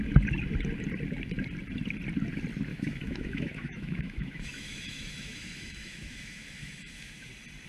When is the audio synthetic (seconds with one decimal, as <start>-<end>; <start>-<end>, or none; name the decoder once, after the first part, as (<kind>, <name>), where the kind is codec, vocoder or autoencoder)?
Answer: 2.7-7.3 (autoencoder, DAC-VAE)